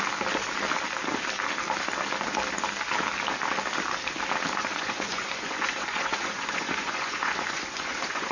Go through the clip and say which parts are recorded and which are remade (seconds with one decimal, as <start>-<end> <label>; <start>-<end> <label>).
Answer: 0.0-4.7 recorded; 4.7-8.3 remade